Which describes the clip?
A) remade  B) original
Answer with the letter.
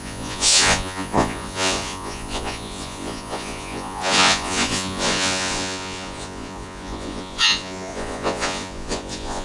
A